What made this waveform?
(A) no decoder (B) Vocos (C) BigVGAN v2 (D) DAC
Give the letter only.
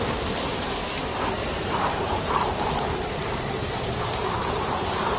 C